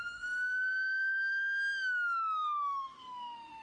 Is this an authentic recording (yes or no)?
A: no